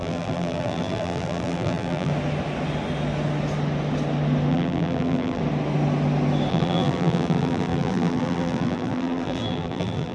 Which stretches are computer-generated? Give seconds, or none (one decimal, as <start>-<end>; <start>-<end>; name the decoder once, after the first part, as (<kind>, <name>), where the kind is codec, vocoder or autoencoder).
0.0-2.1 (vocoder, BigVGAN v2); 4.5-5.4; 6.5-10.1